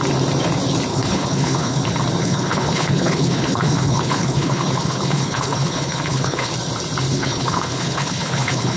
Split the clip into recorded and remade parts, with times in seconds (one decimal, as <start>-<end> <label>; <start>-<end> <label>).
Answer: 0.0-0.9 recorded; 0.9-1.8 remade; 1.8-2.2 recorded; 2.2-6.5 remade; 6.5-7.1 recorded; 7.1-8.8 remade